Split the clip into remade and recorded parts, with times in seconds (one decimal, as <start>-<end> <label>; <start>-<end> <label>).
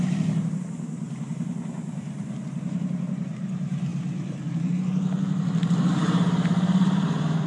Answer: 0.0-3.9 remade; 3.9-4.5 recorded; 4.5-7.5 remade